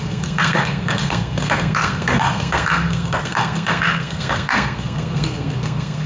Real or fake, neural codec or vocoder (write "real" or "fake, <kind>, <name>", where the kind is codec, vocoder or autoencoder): fake, codec, SNAC